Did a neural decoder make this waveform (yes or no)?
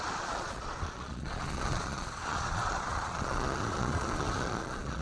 yes